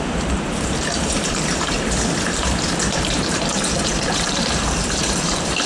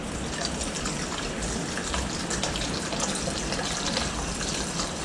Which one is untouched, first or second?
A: second